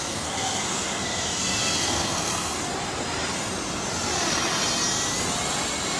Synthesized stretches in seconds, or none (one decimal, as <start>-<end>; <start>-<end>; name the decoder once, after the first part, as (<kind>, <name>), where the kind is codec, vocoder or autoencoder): 0.0-2.6 (codec, SNAC)